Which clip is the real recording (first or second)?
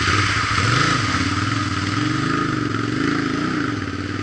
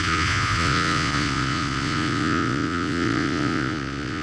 first